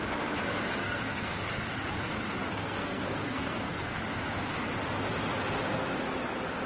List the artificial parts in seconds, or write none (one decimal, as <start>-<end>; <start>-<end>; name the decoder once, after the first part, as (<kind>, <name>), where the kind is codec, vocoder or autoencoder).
0.8-1.4 (codec, SNAC); 2.4-4.0